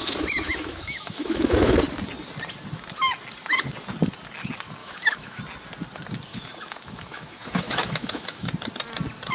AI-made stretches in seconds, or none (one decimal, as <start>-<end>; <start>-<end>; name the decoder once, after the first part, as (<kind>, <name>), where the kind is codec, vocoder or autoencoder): 0.0-1.7 (autoencoder, DAC-VAE); 4.8-5.4; 6.3-8.5